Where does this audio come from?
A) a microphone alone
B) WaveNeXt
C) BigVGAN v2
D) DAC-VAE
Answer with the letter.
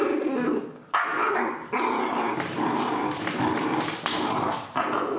A